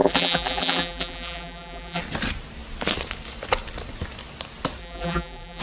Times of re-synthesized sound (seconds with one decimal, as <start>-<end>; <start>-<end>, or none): 0.0-2.0; 4.8-5.6